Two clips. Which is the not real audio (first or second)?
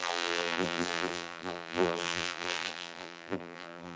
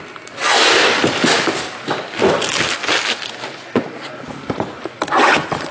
first